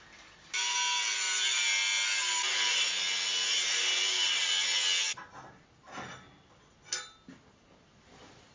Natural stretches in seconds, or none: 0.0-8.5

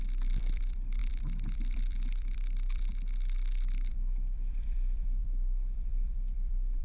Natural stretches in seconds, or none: none

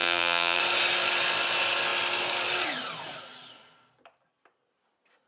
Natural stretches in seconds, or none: 0.6-5.3

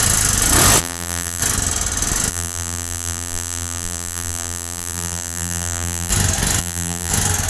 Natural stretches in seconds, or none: 0.0-0.8; 1.4-2.3; 6.1-6.6; 7.1-7.5

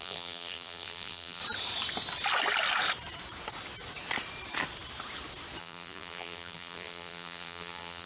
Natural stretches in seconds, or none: 1.4-5.6

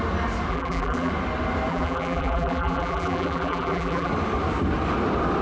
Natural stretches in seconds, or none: 0.0-0.5; 1.1-1.7; 4.1-5.4

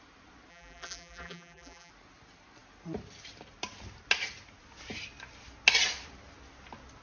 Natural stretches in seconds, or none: 0.0-0.5; 1.9-7.0